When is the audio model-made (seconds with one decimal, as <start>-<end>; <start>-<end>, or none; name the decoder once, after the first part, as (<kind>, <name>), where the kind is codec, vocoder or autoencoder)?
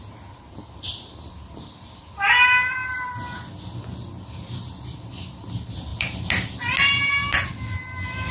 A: none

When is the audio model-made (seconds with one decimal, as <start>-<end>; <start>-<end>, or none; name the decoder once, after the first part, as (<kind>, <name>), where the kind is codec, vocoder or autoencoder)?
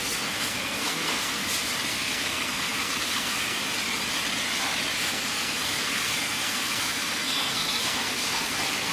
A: 0.0-1.4 (codec, SNAC); 1.9-3.6; 5.0-8.9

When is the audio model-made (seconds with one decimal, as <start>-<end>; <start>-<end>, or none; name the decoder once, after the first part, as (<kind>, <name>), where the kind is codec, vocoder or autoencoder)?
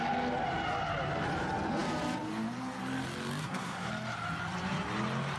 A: 3.4-3.9 (codec, SNAC)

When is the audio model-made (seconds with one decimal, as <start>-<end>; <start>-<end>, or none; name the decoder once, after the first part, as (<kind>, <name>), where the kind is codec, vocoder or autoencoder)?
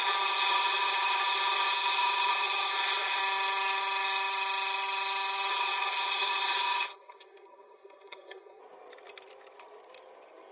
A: 0.0-3.2 (codec, SNAC); 5.5-8.6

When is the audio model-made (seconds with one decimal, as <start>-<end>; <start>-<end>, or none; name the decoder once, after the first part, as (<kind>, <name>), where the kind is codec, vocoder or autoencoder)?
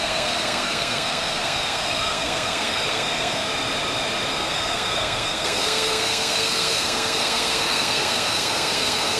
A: 0.0-3.5 (codec, SNAC); 4.3-9.2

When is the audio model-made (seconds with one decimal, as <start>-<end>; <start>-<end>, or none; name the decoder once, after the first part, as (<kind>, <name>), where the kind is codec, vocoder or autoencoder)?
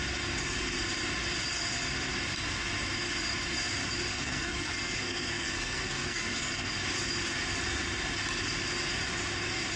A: 4.1-6.7 (codec, SNAC)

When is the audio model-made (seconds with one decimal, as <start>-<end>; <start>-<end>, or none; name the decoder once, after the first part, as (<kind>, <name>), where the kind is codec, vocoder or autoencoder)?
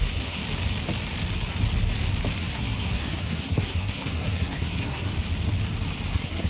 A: 0.0-0.4 (codec, SNAC); 2.4-5.1; 6.1-6.5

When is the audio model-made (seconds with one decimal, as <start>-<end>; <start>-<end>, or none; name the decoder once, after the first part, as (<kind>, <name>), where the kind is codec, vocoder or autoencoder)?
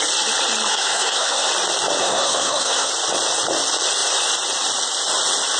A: 0.7-1.5 (codec, SNAC); 2.0-2.9